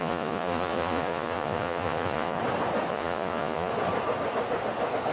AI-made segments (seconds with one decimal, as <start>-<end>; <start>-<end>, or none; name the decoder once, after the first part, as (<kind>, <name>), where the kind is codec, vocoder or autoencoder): 0.0-2.4 (vocoder, Vocos); 2.9-3.7